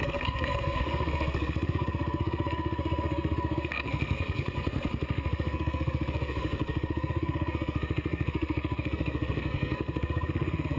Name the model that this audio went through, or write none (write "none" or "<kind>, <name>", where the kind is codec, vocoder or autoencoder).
codec, SNAC